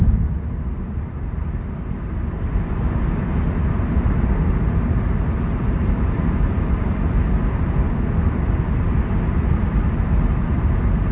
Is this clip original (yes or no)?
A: yes